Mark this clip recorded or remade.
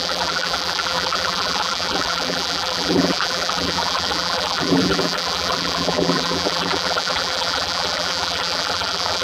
remade